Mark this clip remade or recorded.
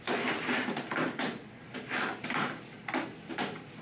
recorded